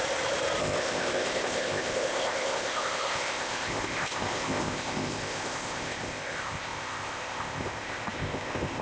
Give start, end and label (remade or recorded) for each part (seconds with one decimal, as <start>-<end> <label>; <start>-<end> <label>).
0.0-0.6 recorded; 0.6-8.8 remade